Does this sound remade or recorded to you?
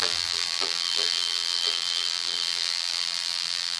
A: remade